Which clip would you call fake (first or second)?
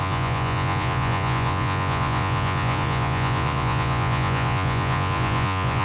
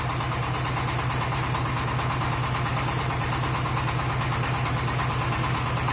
first